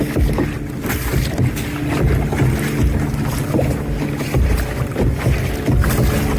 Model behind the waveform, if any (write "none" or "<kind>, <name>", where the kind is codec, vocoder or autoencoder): none